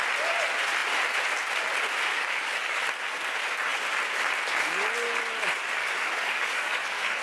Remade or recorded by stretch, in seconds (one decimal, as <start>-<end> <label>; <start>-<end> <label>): 0.0-2.1 recorded; 2.1-2.8 remade; 2.8-5.8 recorded; 5.8-7.2 remade